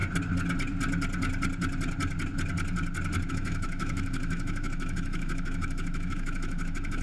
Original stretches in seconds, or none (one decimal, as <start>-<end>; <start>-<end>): 0.0-3.3